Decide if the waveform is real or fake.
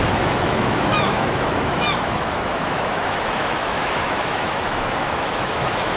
fake